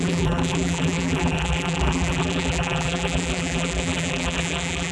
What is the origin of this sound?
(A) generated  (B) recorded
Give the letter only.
A